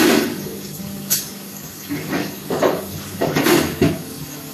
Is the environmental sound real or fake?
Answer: fake